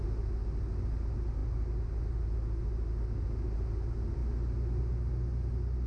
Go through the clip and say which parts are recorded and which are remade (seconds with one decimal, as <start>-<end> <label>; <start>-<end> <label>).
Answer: 0.0-5.9 recorded